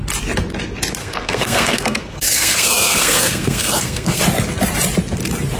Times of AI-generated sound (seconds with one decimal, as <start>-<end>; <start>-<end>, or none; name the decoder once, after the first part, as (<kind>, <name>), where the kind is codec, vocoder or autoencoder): 1.0-4.2 (codec, SNAC)

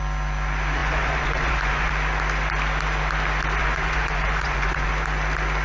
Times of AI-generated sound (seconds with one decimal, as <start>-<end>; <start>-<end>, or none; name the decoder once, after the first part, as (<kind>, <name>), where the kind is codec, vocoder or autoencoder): 0.8-1.9 (vocoder, Vocos); 3.6-4.9

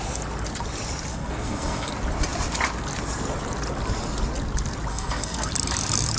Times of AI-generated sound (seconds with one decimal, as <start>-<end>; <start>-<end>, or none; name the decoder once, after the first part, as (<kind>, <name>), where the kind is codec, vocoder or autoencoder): 1.1-1.9 (codec, SNAC); 4.9-5.5